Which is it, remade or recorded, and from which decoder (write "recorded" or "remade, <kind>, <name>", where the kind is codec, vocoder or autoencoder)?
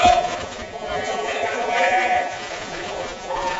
remade, vocoder, Vocos